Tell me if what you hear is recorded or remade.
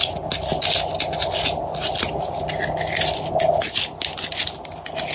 recorded